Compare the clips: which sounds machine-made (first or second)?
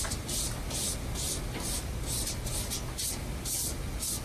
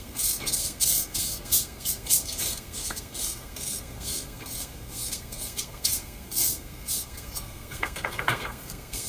second